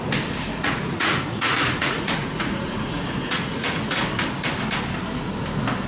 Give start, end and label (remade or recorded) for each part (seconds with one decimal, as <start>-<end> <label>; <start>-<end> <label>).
0.0-0.5 recorded; 0.5-4.0 remade; 4.0-5.9 recorded